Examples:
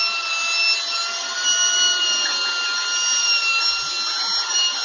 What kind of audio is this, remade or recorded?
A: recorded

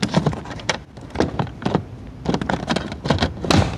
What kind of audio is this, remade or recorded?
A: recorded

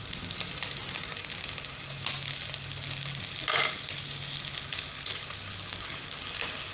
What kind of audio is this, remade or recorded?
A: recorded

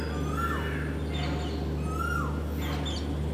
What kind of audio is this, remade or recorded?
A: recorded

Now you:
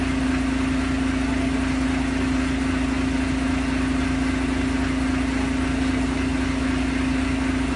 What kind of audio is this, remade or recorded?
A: recorded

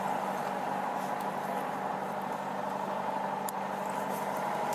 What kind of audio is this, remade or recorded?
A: recorded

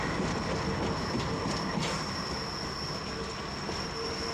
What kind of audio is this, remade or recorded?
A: recorded